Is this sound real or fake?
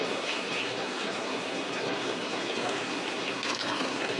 fake